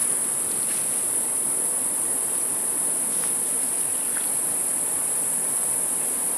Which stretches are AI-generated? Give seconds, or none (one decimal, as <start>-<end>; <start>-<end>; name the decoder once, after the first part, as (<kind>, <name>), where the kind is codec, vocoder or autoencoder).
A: none